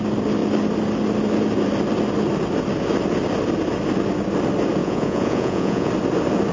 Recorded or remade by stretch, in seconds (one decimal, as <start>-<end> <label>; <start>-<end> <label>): 0.0-4.8 recorded; 4.8-5.9 remade; 5.9-6.5 recorded